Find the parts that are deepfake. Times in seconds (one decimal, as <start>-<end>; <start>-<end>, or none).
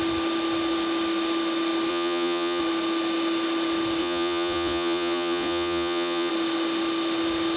1.9-2.6; 4.0-6.3